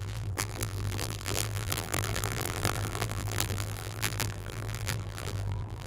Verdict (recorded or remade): remade